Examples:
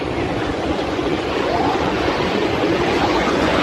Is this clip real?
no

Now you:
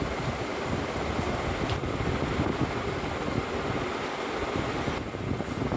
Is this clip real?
yes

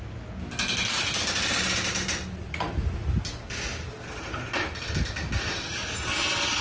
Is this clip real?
yes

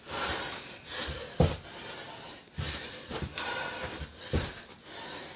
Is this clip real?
yes